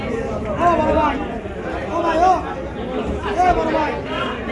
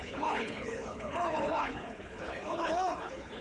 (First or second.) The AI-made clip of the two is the second